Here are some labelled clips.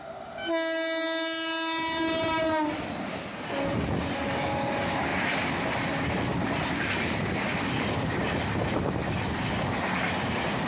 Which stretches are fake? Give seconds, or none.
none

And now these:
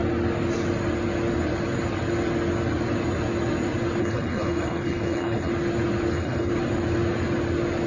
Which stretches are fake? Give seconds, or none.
4.0-5.5; 6.1-6.5

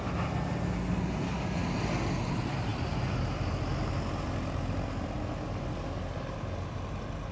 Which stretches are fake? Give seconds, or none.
none

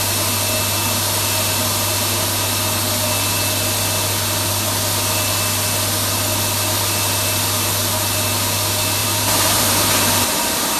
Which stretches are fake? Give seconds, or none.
9.0-9.9

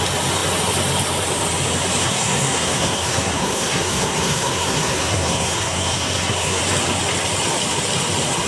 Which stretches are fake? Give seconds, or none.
2.0-6.6

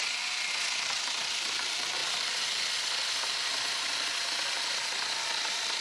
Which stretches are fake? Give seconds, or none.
none